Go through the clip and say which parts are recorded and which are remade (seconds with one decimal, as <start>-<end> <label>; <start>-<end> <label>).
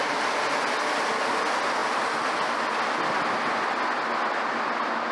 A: 0.0-5.1 recorded